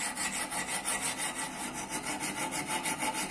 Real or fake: real